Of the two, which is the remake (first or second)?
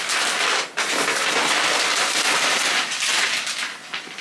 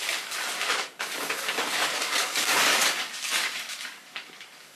second